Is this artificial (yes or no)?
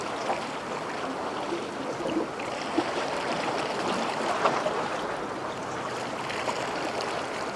no